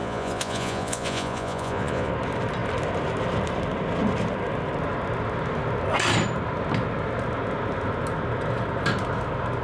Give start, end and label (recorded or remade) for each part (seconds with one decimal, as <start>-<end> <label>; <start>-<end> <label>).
0.0-2.1 remade; 2.1-9.6 recorded